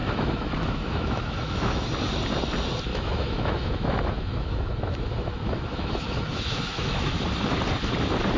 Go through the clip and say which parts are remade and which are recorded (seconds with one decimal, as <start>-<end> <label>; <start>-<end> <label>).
0.0-1.9 remade; 1.9-2.9 recorded; 2.9-7.2 remade; 7.2-8.4 recorded